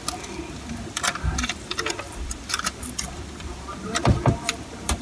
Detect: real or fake fake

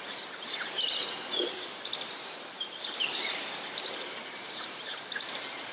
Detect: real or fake fake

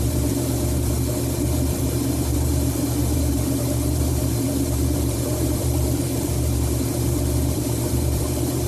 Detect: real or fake fake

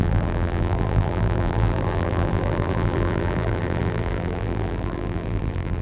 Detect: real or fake fake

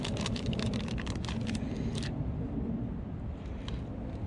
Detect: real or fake fake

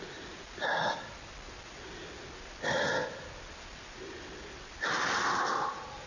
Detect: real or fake real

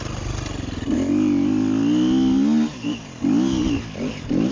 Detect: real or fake real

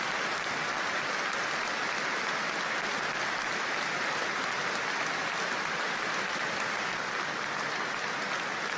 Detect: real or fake real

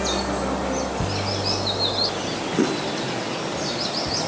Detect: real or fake real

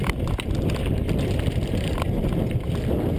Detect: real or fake real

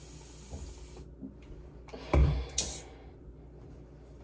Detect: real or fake real